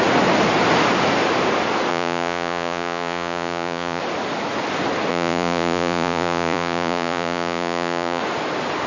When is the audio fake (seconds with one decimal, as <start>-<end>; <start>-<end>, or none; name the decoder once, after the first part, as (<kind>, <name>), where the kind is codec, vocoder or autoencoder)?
1.9-4.0 (vocoder, Vocos); 5.1-8.2